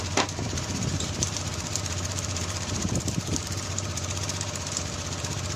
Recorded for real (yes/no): no